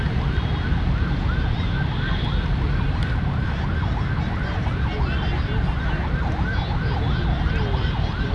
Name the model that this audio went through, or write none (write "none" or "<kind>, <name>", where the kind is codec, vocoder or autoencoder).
none